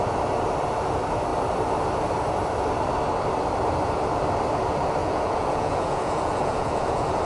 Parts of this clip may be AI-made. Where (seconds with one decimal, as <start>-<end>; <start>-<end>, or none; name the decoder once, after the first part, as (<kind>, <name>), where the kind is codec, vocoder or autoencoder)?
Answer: 5.0-7.2 (vocoder, Vocos)